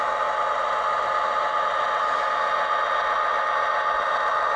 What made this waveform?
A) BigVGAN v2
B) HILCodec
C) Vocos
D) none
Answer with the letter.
D